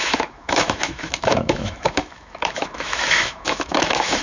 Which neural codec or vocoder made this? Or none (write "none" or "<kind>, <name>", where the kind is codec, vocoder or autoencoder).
autoencoder, DAC-VAE